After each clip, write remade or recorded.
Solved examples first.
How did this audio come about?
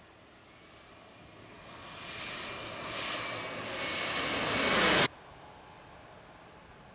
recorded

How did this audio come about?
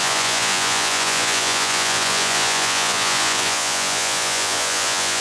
remade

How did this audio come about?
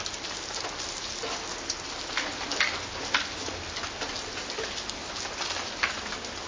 recorded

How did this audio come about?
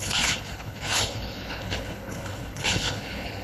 remade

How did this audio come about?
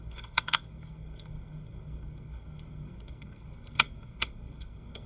remade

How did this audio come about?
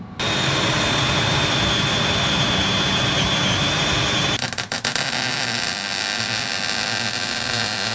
recorded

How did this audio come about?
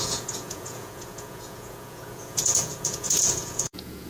remade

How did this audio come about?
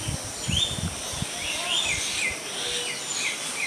recorded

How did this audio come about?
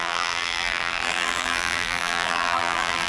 remade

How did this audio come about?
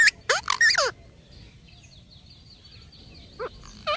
recorded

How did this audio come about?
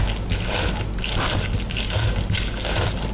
recorded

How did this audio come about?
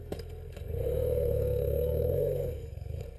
remade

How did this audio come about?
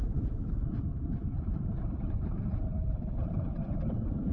recorded